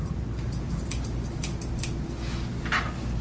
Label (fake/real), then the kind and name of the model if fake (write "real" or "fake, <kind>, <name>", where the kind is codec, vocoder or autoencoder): real